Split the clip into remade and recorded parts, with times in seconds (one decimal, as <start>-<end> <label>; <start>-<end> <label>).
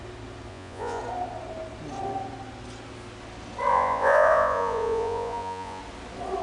0.0-0.5 recorded; 0.5-1.0 remade; 1.0-3.7 recorded; 3.7-5.8 remade; 5.8-6.4 recorded